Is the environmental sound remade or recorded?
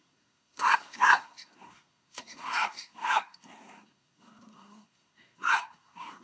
remade